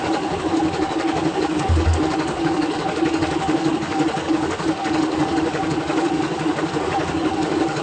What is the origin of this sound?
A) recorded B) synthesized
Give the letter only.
B